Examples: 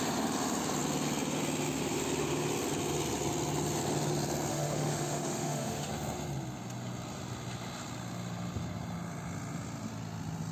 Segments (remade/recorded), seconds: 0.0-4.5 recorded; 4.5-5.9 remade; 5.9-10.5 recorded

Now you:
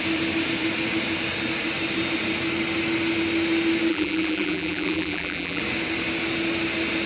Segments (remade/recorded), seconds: 0.0-3.9 recorded; 3.9-5.6 remade; 5.6-7.1 recorded